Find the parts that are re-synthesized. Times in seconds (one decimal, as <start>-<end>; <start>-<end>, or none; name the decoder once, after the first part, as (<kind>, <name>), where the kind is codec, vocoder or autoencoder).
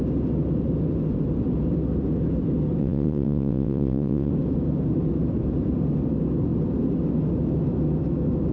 2.8-4.3 (vocoder, WaveNeXt)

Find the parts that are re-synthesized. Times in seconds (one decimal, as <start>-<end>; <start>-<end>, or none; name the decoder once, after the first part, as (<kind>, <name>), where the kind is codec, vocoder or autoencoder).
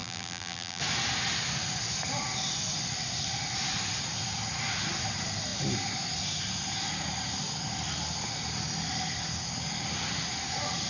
0.0-0.8 (vocoder, BigVGAN v2)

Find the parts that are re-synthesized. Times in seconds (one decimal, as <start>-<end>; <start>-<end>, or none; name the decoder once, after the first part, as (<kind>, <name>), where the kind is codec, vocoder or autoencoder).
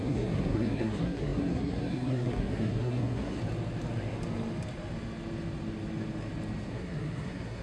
0.0-3.4 (codec, SNAC); 6.7-7.6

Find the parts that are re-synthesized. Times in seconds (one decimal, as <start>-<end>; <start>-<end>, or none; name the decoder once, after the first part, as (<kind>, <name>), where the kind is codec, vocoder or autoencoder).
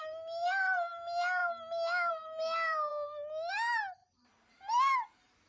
0.0-1.4 (vocoder, BigVGAN v2); 2.1-2.9; 3.5-5.5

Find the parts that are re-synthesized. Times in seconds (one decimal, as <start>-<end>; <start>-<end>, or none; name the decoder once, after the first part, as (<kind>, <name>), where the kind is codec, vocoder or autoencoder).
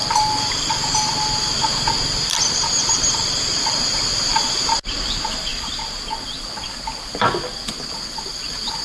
none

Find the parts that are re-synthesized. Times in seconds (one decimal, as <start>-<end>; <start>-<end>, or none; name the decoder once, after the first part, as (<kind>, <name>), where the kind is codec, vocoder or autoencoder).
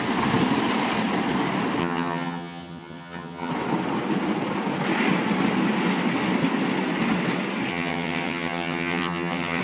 1.8-3.5 (vocoder, HiFi-GAN); 7.7-9.6